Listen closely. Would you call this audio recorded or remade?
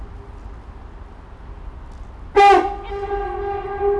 recorded